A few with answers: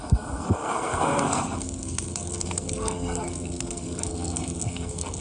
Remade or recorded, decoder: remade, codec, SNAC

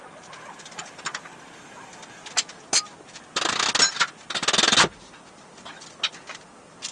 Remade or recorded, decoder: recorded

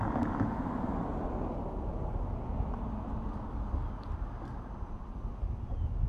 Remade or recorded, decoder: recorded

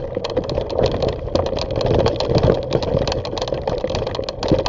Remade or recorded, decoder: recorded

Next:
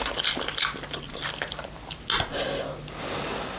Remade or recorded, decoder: recorded